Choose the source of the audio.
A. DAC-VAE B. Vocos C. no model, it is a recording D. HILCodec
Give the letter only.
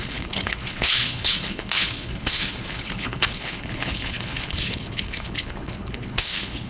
D